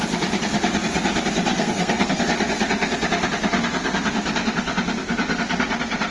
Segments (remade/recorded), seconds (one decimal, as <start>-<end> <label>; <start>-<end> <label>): 0.0-1.5 recorded; 1.5-2.2 remade; 2.2-6.1 recorded